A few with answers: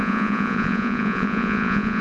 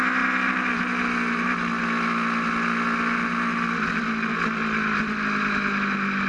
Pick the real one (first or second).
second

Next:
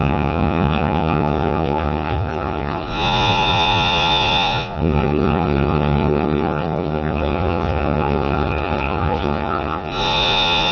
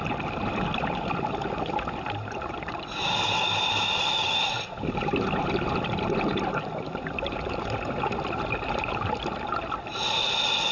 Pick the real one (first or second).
second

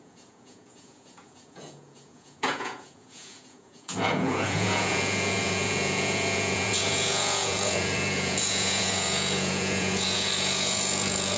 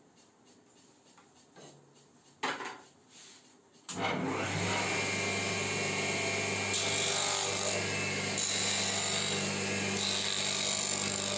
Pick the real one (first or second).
second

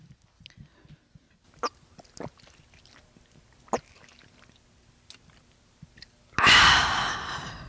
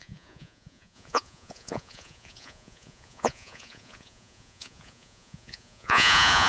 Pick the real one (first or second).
first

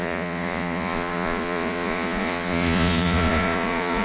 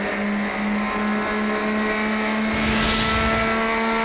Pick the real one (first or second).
second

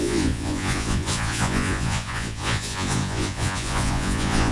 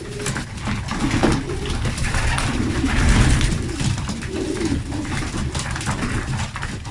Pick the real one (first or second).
second